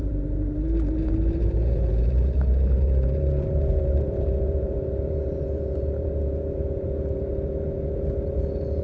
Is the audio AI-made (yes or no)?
yes